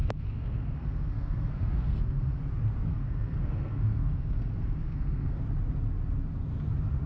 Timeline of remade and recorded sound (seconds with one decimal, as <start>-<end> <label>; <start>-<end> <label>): 0.0-2.4 remade; 2.4-2.9 recorded; 2.9-5.4 remade; 5.4-7.1 recorded